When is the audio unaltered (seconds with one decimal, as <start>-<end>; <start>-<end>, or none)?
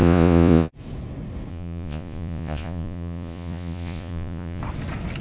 0.7-1.5; 4.6-5.2